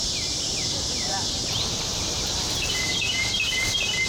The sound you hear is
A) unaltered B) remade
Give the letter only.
B